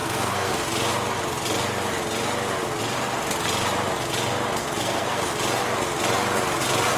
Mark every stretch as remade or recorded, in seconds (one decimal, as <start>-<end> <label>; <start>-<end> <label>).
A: 0.0-0.5 remade; 0.5-4.6 recorded; 4.6-5.2 remade; 5.2-7.0 recorded